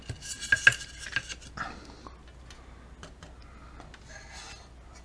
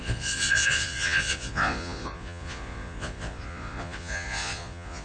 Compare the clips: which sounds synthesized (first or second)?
second